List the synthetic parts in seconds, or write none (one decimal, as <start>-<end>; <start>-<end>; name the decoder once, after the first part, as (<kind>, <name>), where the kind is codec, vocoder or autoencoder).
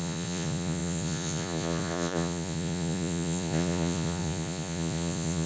0.0-5.5 (vocoder, Vocos)